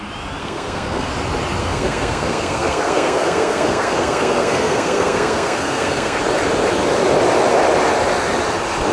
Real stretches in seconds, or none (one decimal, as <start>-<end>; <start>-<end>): 0.0-0.4; 1.1-1.6; 6.2-8.9